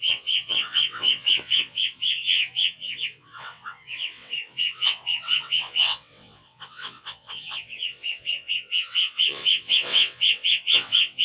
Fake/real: fake